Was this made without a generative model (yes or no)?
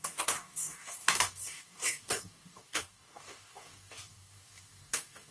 no